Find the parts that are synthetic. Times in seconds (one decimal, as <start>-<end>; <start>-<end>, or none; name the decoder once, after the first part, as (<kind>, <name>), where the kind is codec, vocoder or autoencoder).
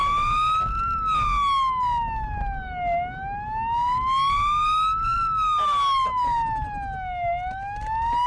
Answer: none